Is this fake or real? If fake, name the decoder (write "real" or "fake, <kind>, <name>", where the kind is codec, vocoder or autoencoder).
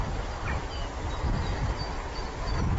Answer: real